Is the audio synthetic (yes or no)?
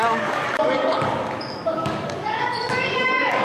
yes